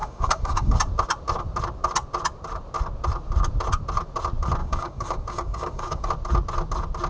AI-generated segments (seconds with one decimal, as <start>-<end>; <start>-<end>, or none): 0.0-0.8; 4.6-6.1